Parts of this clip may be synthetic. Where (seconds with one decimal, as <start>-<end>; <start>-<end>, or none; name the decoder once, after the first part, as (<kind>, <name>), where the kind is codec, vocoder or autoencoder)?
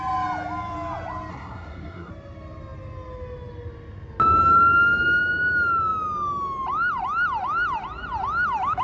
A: 1.3-2.1 (codec, SNAC)